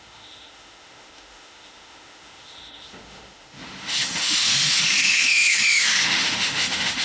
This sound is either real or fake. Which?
fake